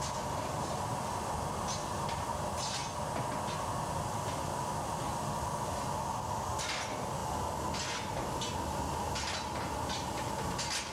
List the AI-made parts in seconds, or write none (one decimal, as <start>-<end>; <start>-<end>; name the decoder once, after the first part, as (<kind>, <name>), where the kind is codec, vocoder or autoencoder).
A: none